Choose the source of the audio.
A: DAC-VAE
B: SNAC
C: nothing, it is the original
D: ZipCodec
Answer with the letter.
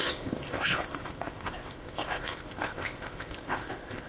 D